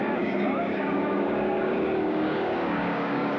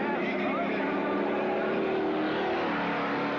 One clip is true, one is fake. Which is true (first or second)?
second